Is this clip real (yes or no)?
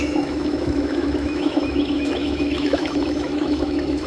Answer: no